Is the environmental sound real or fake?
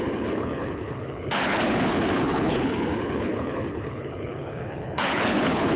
fake